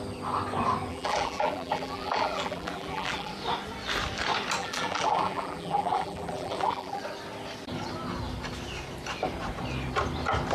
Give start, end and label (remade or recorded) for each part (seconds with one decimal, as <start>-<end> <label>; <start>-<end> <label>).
0.0-0.9 recorded; 0.9-3.3 remade; 3.3-4.6 recorded; 4.6-7.0 remade; 7.0-10.5 recorded